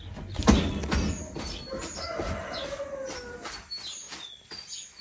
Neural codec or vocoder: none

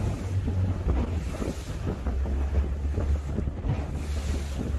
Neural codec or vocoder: none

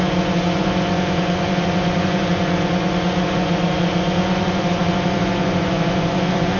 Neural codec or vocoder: vocoder, Vocos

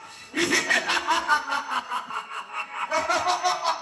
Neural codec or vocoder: codec, SNAC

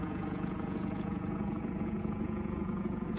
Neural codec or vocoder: vocoder, Vocos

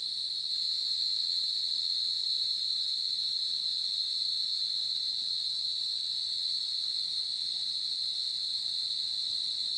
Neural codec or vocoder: none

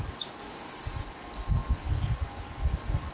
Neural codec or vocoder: none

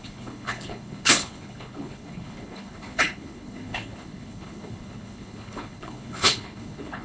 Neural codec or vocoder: codec, HILCodec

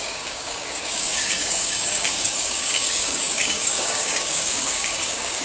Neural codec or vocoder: codec, DAC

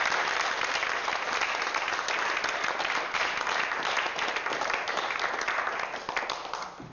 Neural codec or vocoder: none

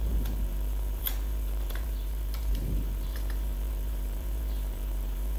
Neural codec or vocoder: vocoder, BigVGAN v2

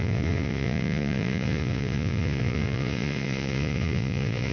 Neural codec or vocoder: vocoder, Vocos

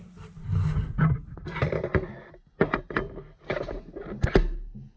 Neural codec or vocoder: none